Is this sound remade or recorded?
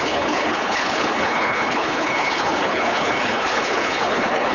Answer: remade